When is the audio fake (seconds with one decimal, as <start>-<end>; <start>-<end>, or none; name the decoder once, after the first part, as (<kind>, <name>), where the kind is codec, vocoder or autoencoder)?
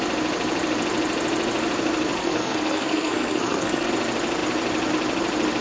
2.2-3.9 (codec, SNAC)